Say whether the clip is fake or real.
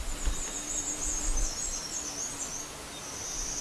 real